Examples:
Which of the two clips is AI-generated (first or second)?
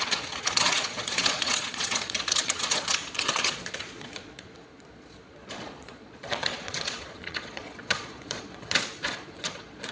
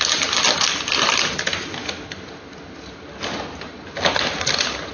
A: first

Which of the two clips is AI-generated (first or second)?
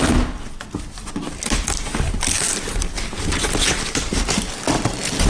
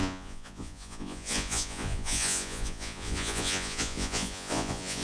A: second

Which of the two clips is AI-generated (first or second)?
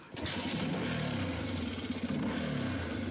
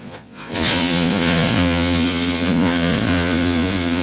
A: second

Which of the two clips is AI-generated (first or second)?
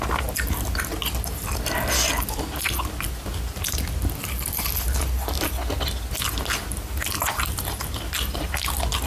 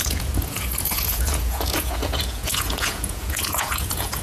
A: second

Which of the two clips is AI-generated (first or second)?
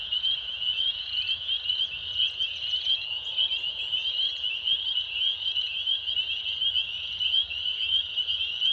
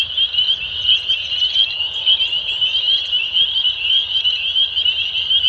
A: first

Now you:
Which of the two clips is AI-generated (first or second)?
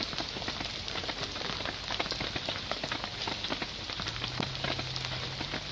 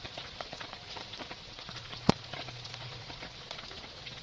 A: second